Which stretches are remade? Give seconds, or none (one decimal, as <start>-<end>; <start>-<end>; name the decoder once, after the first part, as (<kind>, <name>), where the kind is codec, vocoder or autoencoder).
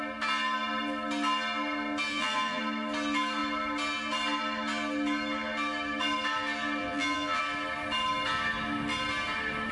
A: 2.1-2.6 (vocoder, BigVGAN v2); 6.8-7.4